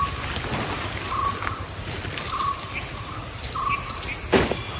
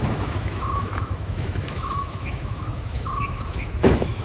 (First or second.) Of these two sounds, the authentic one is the first